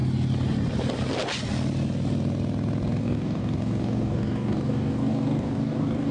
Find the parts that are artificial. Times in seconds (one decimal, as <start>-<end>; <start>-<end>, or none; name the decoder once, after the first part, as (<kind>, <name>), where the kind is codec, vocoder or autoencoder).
3.0-6.1 (codec, DAC)